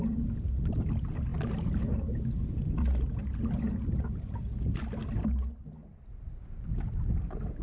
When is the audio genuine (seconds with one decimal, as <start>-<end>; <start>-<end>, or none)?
0.0-7.6